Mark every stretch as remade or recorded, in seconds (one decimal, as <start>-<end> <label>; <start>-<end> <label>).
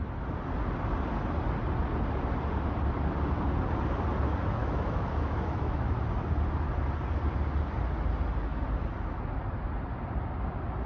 0.0-4.6 recorded; 4.6-6.0 remade; 6.0-10.9 recorded